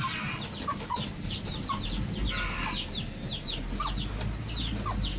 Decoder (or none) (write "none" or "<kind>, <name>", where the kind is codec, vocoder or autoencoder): none